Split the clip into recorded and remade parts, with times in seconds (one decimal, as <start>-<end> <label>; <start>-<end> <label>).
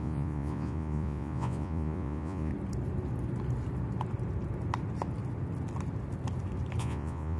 0.0-2.5 remade; 2.5-6.8 recorded; 6.8-7.4 remade